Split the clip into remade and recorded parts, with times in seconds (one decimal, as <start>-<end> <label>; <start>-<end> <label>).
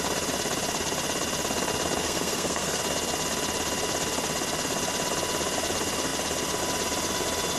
0.0-2.0 recorded; 2.0-2.8 remade; 2.8-7.6 recorded